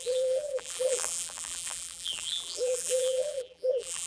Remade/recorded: remade